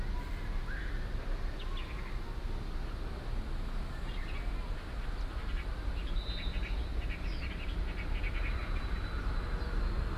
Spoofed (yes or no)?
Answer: no